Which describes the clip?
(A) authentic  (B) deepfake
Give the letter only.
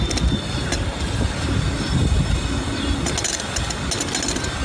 A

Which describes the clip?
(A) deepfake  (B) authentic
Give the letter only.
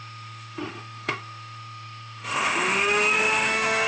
A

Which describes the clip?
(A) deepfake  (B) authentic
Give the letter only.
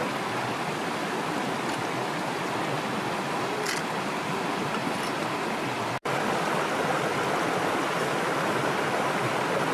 B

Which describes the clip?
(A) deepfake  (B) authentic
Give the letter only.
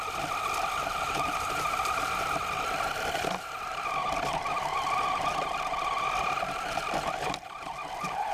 B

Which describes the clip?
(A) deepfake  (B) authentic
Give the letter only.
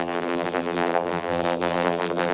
A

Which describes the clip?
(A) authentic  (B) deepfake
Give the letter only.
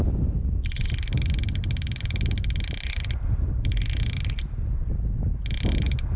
A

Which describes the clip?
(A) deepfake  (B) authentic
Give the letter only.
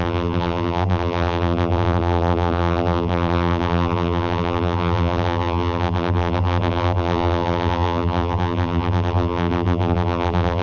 A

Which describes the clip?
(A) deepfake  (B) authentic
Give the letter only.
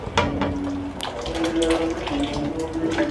B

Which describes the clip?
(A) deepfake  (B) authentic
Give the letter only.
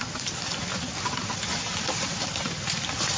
B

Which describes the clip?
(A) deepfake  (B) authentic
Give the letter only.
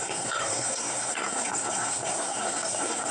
A